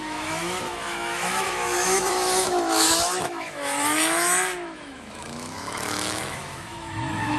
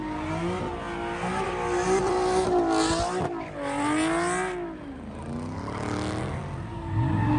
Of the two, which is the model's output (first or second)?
first